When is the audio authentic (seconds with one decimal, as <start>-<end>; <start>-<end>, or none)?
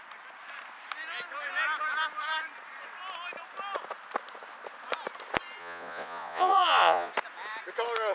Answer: 0.0-5.6; 7.1-8.1